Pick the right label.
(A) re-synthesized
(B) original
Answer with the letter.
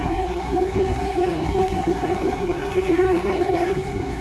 A